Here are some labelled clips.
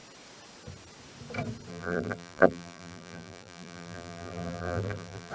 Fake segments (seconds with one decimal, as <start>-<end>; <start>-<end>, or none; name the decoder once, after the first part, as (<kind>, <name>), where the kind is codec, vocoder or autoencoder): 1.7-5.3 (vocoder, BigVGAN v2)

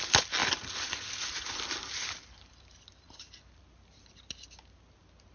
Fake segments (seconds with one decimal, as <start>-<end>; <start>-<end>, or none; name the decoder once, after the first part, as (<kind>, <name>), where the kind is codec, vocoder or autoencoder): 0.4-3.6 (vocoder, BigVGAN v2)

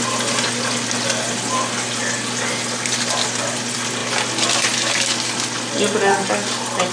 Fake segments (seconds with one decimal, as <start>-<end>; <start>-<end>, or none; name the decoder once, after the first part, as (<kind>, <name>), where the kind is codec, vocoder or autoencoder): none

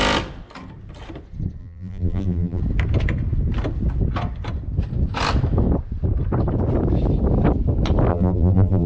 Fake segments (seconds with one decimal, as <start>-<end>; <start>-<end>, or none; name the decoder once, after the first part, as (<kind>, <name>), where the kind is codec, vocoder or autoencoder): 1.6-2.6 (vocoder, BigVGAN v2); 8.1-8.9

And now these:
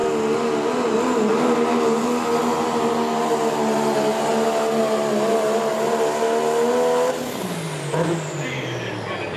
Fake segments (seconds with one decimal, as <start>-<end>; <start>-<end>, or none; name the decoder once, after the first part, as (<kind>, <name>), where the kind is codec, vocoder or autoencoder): none

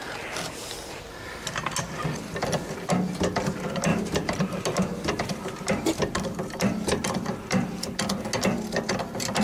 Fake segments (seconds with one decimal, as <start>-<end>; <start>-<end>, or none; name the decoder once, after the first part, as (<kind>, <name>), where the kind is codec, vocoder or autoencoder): 3.9-7.8 (vocoder, BigVGAN v2)

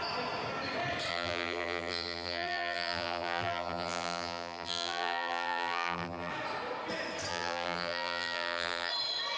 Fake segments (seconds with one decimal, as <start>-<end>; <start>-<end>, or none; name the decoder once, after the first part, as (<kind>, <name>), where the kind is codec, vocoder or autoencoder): 1.1-6.3 (vocoder, BigVGAN v2); 7.3-8.9